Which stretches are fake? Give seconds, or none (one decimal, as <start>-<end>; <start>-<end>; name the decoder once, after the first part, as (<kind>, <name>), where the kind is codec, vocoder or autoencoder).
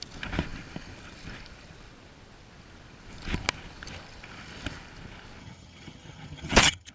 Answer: 5.4-6.9 (vocoder, HiFi-GAN)